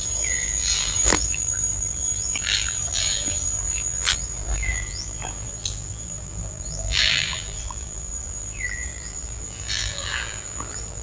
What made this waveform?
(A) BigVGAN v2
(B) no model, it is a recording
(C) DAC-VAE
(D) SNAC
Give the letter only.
A